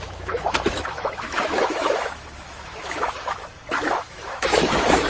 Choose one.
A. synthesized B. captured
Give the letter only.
A